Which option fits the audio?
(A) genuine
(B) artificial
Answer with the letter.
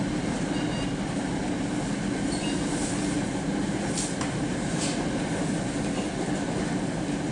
A